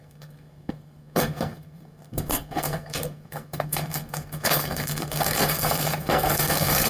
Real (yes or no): no